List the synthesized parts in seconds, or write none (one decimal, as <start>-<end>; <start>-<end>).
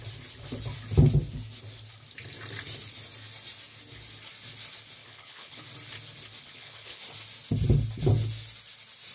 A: 5.0-5.6; 6.4-7.0